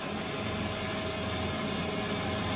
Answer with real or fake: real